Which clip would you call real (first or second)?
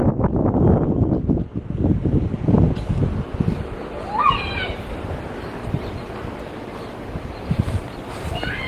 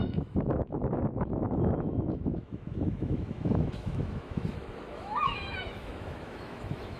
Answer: first